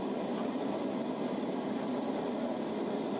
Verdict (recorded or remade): recorded